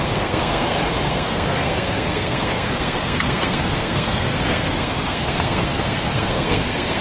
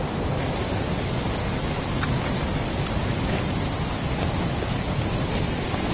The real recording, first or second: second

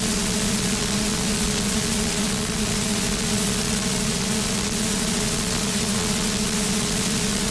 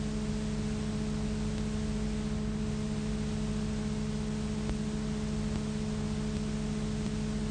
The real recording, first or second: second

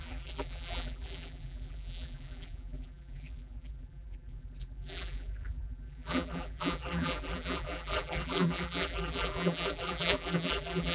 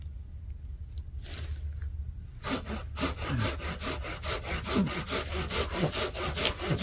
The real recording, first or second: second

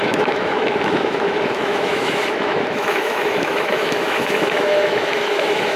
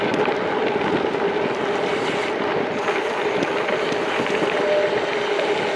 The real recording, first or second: second